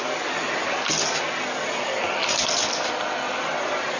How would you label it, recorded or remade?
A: recorded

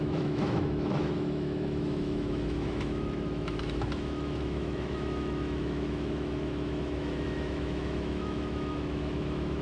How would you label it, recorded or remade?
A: remade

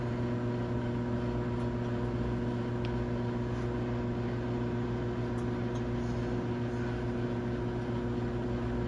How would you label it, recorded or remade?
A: recorded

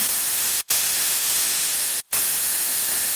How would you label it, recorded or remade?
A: remade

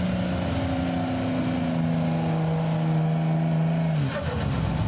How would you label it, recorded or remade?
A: recorded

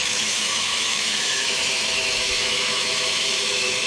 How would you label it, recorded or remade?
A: remade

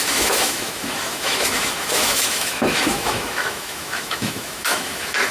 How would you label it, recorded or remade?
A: remade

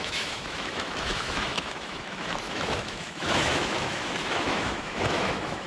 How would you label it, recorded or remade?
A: remade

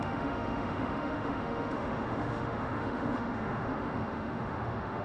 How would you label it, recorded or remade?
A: remade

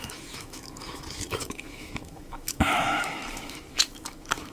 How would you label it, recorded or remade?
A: remade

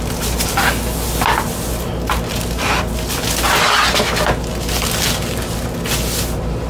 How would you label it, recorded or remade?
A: recorded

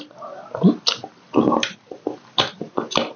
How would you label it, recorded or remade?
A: recorded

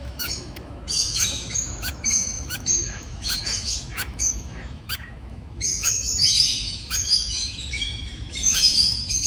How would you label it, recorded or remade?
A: remade